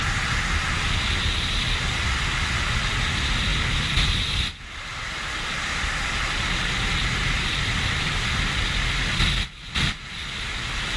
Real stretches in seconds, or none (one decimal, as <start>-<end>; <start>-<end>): 0.0-11.0